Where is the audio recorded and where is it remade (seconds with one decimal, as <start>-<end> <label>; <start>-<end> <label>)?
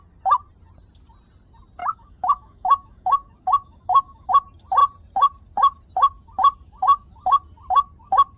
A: 0.0-1.8 recorded; 1.8-4.3 remade; 4.3-8.4 recorded